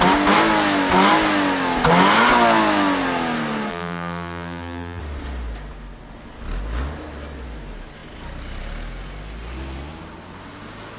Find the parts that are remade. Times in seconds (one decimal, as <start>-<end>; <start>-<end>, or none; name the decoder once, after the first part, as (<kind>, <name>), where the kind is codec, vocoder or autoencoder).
3.7-5.0 (vocoder, BigVGAN v2)